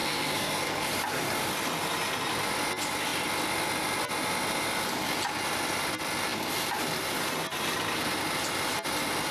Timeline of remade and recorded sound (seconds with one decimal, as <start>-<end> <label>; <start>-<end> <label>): 0.0-0.9 remade; 0.9-9.3 recorded